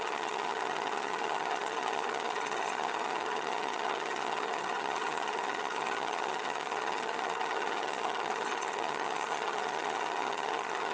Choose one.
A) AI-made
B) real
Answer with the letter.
A